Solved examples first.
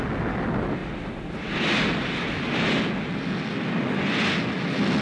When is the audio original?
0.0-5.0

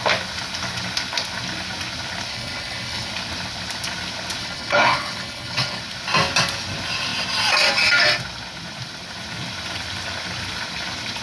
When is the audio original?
0.0-2.3; 3.1-4.4; 5.8-11.2

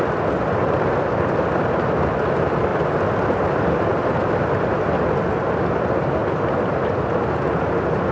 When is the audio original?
0.0-8.1